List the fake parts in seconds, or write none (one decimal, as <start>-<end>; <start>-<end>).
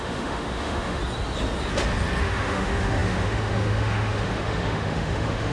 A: 0.0-1.0; 2.2-5.5